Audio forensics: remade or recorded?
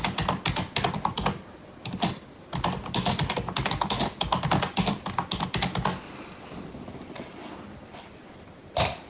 recorded